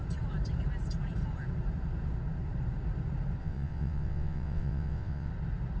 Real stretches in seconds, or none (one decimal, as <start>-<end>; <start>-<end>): 0.0-3.4; 5.3-5.8